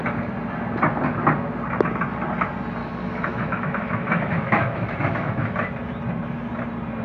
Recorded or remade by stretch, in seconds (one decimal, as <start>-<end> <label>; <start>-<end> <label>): 0.0-2.8 recorded; 2.8-5.7 remade; 5.7-7.0 recorded